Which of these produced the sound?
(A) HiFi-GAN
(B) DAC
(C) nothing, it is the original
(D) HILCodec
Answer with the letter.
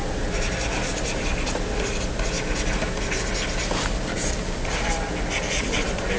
C